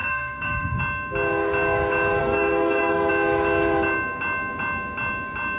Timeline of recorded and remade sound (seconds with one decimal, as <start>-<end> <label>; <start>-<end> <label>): 0.0-0.8 remade; 0.8-2.2 recorded; 2.2-3.1 remade; 3.1-5.6 recorded